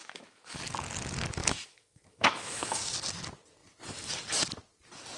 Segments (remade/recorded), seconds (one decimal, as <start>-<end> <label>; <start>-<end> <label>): 0.0-0.6 remade; 0.6-1.4 recorded; 1.4-2.9 remade; 2.9-5.2 recorded